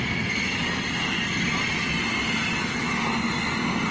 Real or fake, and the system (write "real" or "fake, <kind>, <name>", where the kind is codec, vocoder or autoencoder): real